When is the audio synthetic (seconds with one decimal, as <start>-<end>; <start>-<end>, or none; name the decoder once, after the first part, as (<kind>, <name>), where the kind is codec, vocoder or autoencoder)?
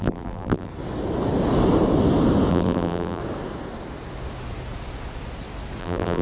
0.0-0.7 (vocoder, BigVGAN v2); 2.5-3.2; 5.8-6.2